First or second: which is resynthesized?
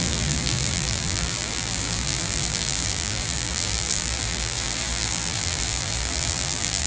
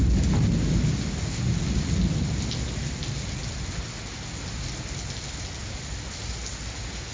first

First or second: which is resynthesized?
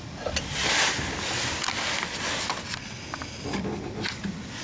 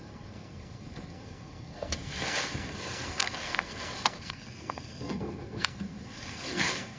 second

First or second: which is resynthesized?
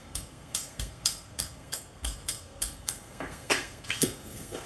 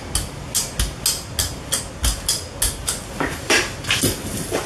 first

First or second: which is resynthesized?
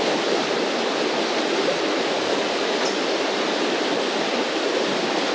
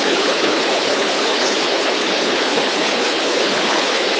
second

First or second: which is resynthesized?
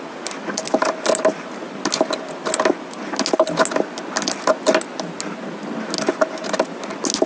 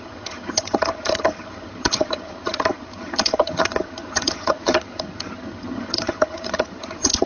second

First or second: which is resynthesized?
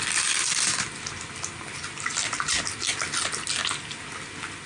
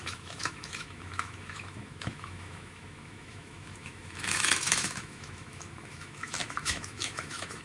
second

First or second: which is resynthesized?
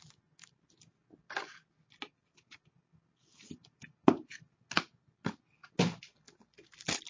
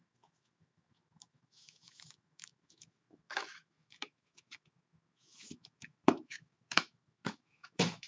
second